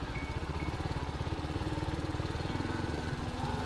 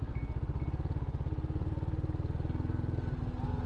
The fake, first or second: first